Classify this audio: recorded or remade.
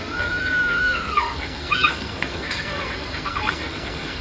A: remade